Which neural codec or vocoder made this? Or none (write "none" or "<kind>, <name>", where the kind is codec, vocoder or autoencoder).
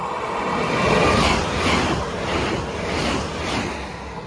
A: none